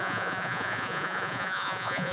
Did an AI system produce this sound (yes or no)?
yes